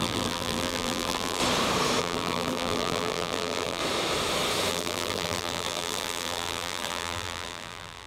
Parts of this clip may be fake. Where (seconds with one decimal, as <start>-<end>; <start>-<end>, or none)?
0.0-1.4; 2.0-3.8; 4.7-8.1